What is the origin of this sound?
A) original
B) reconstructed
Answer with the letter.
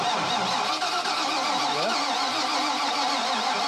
A